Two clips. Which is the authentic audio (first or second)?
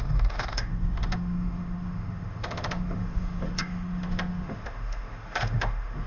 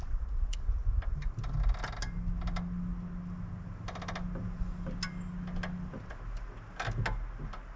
second